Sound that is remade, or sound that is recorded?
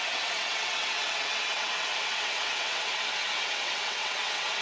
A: remade